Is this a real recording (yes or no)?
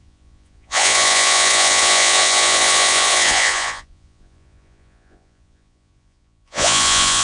no